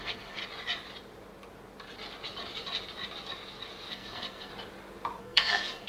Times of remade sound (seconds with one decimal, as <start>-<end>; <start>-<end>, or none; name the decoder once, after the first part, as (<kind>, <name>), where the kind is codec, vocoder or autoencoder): 0.0-0.4 (codec, SNAC); 3.9-4.5; 5.2-5.9